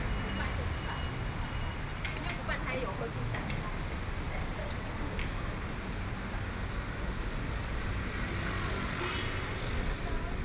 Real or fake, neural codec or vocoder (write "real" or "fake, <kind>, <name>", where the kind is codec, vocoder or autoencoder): real